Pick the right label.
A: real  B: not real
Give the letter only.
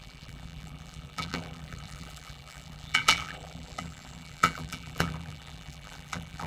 B